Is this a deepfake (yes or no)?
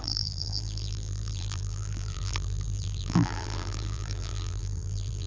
yes